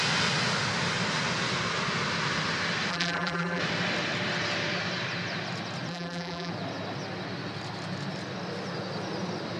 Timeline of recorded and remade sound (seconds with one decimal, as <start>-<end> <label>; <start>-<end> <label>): 0.0-2.9 recorded; 2.9-3.6 remade; 3.6-5.9 recorded; 5.9-6.5 remade; 6.5-9.6 recorded